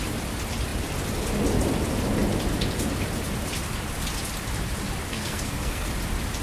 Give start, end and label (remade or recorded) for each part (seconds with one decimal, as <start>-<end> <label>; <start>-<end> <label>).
0.0-5.1 recorded; 5.1-5.9 remade; 5.9-6.4 recorded